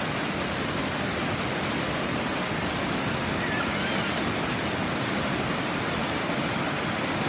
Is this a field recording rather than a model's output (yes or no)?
yes